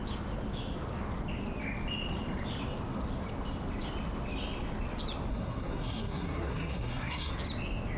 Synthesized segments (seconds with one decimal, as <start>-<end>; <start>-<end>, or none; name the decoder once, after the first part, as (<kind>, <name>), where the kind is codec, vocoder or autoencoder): 5.3-7.3 (codec, SNAC)